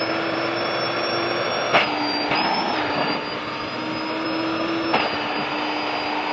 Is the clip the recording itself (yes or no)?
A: yes